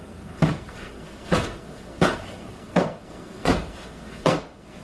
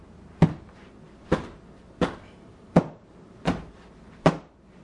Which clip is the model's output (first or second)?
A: first